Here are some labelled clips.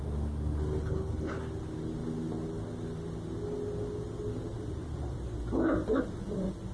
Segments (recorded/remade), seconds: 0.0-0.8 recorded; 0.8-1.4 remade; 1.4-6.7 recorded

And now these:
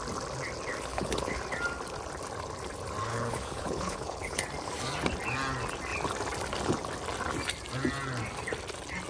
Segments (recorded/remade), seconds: 0.0-0.9 recorded; 0.9-1.4 remade; 1.4-3.1 recorded; 3.1-4.4 remade; 4.4-9.1 recorded

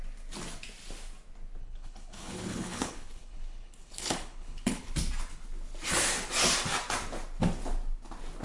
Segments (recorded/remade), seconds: 0.0-1.6 recorded; 1.6-4.9 remade; 4.9-8.4 recorded

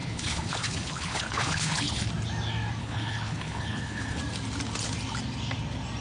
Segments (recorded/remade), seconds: 0.0-2.1 remade; 2.1-2.8 recorded; 2.8-4.2 remade; 4.2-6.0 recorded

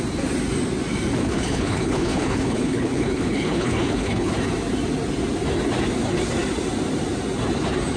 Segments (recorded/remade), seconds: 0.0-1.2 recorded; 1.2-4.3 remade; 4.3-8.0 recorded